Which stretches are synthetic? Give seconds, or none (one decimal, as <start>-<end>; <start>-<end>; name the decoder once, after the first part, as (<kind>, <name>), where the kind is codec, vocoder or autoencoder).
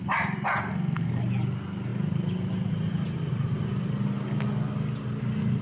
0.7-1.2 (codec, SNAC)